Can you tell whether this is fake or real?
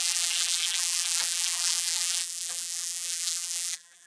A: fake